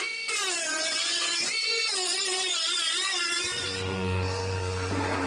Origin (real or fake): fake